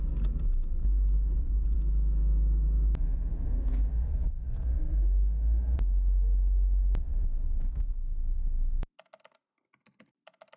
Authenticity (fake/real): real